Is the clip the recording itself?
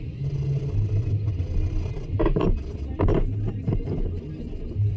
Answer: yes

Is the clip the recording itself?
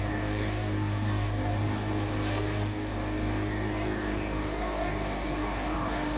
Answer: no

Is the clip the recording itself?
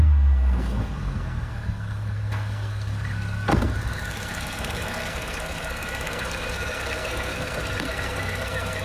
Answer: no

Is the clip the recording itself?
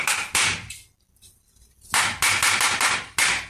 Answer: yes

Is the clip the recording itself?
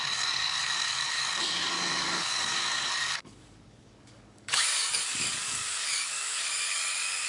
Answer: no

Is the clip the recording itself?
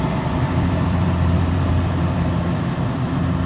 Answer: no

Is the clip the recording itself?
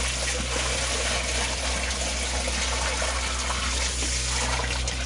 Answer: yes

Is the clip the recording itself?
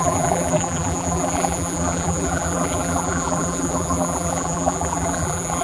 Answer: no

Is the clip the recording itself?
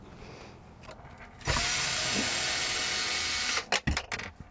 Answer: yes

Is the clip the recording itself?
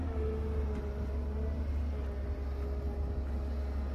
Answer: yes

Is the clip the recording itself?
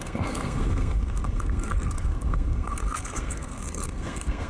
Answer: no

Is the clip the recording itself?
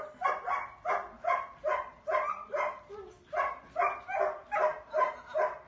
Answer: yes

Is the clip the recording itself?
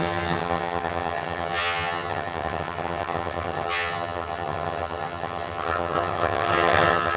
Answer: no